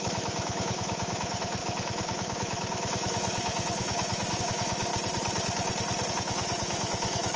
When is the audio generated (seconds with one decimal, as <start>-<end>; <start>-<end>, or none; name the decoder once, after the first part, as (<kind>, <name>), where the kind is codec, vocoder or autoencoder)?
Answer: 0.0-4.9 (autoencoder, DAC-VAE); 6.1-7.4